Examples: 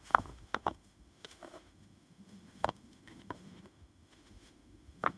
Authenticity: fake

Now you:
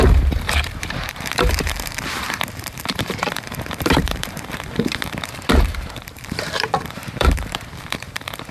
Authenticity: fake